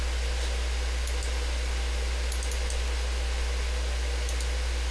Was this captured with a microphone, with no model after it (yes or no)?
yes